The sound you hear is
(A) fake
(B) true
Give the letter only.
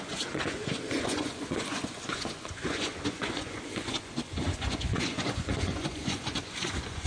A